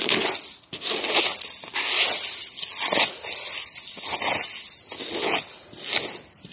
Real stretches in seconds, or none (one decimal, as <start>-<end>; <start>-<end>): 0.0-6.5